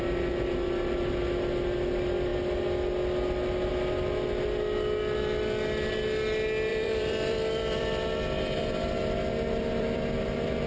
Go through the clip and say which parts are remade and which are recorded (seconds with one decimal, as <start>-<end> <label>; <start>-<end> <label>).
0.0-6.7 recorded; 6.7-8.7 remade; 8.7-9.6 recorded; 9.6-10.7 remade